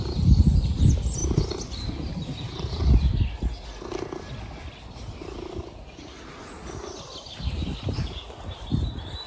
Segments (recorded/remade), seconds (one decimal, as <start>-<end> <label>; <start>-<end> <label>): 0.0-9.3 recorded